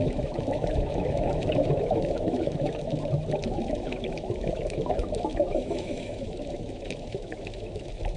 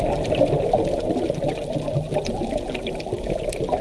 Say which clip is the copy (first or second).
first